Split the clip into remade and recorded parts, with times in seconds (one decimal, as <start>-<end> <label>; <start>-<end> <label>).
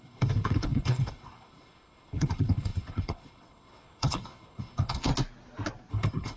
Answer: 0.0-5.1 remade; 5.1-5.9 recorded; 5.9-6.4 remade